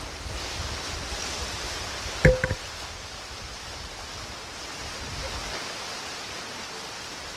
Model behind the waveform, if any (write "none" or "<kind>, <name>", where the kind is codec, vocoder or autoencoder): none